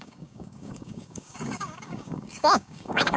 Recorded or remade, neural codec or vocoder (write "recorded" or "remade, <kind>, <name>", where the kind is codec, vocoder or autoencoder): remade, codec, DAC